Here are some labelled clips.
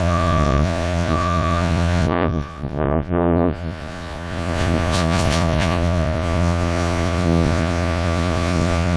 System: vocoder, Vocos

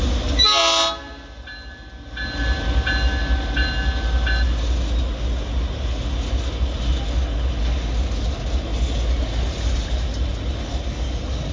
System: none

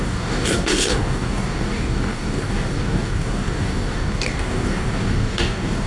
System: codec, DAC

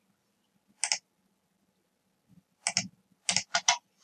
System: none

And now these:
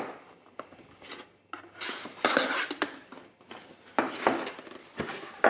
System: none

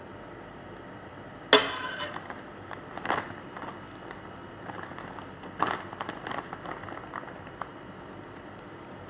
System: none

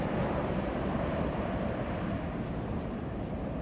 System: vocoder, BigVGAN v2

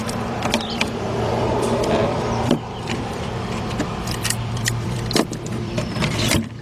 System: vocoder, BigVGAN v2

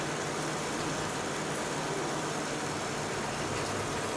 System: none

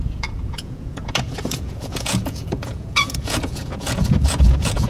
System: vocoder, Vocos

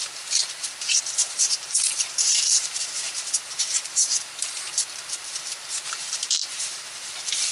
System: vocoder, BigVGAN v2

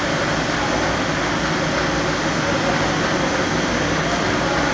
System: none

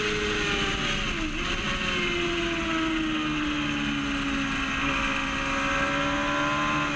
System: none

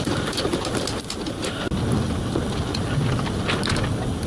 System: none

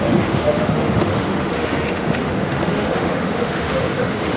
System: autoencoder, DAC-VAE